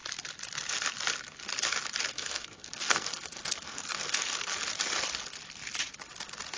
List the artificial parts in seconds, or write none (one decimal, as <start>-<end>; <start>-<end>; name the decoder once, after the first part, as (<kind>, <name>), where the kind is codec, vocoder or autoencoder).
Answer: 2.1-4.2 (codec, SNAC)